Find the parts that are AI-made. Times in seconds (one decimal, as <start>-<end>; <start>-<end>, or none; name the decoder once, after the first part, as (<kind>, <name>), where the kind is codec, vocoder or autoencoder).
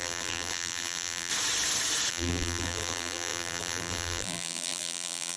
0.0-1.3 (vocoder, BigVGAN v2); 2.1-5.4